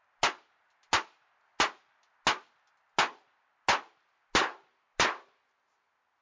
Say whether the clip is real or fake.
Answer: real